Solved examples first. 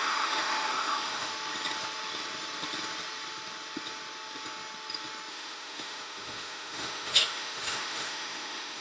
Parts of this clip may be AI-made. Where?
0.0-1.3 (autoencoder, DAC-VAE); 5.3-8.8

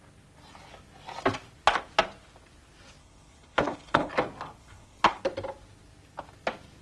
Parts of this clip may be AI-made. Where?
3.0-4.1 (codec, HILCodec); 4.6-5.2

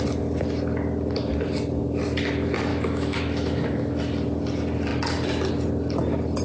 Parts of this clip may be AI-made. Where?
2.7-4.0 (autoencoder, DAC-VAE)

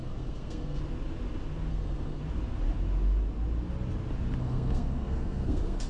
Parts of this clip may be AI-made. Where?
0.0-0.8 (codec, SNAC); 1.7-2.2; 4.4-5.9

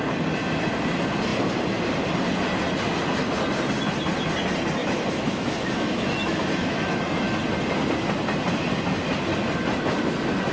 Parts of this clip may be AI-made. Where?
4.8-7.2 (autoencoder, DAC-VAE)

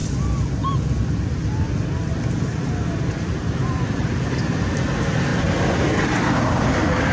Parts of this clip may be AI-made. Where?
none

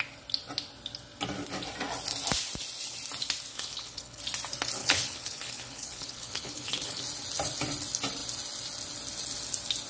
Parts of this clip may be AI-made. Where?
3.5-4.2 (codec, HILCodec); 4.8-7.0

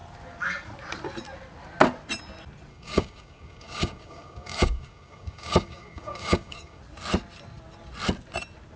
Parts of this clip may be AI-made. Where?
2.7-6.8 (codec, DAC)